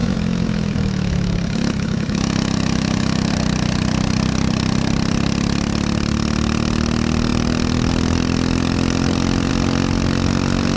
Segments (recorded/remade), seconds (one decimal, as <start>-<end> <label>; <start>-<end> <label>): 0.0-3.3 remade; 3.3-10.8 recorded